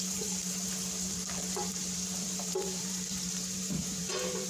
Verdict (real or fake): fake